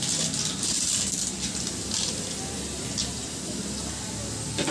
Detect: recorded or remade recorded